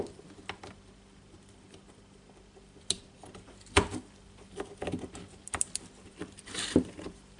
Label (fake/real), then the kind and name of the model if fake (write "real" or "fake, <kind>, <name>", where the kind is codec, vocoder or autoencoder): real